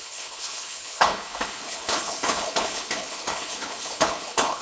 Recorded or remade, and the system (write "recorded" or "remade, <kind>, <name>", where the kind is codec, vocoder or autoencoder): remade, codec, HILCodec